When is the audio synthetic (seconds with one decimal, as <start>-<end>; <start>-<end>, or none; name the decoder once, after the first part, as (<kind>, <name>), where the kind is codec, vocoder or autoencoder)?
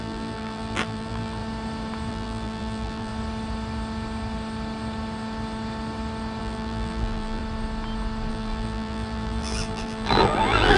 0.0-1.4 (vocoder, BigVGAN v2); 2.1-3.1; 6.4-7.4; 8.3-10.8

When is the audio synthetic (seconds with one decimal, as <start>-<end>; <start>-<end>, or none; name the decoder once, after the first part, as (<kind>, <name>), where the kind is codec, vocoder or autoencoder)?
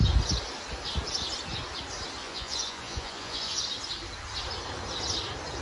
2.2-3.6 (vocoder, Vocos)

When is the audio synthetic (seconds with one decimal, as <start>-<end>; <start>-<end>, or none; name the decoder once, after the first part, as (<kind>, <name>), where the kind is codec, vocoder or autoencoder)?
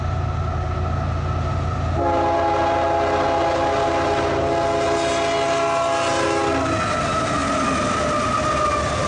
none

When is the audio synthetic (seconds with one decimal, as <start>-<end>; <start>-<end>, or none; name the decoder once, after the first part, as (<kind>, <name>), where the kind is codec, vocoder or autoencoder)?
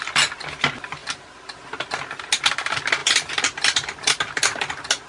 3.0-4.1 (vocoder, BigVGAN v2)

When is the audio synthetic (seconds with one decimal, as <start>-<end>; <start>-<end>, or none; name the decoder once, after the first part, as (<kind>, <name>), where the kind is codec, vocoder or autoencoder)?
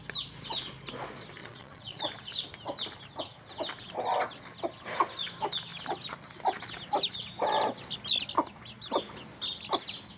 1.4-2.0 (vocoder, Vocos)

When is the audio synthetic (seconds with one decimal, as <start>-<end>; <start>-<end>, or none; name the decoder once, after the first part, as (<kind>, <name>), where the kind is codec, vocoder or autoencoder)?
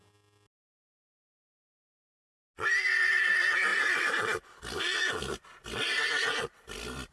3.7-4.8 (vocoder, BigVGAN v2)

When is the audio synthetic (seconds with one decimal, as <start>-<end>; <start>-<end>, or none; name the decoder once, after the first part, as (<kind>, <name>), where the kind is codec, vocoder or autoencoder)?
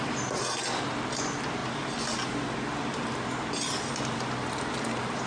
none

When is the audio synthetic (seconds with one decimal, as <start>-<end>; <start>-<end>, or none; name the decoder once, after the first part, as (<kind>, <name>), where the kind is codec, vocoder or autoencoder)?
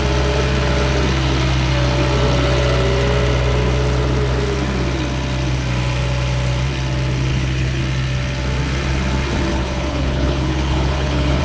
7.3-7.8 (codec, HILCodec); 9.5-11.4